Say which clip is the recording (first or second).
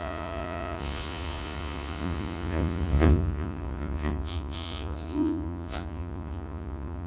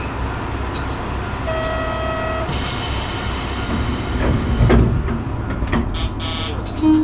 second